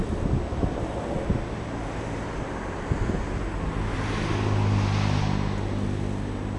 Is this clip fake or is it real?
real